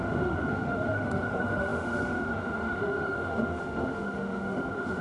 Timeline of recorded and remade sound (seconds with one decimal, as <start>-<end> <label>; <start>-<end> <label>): 0.0-5.0 remade